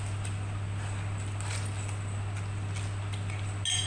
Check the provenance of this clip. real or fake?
real